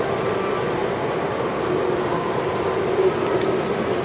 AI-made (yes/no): no